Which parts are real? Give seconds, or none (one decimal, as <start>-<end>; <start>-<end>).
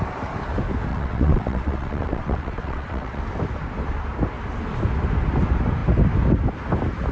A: 0.0-0.9; 3.2-7.1